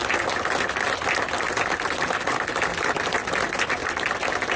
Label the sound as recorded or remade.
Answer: recorded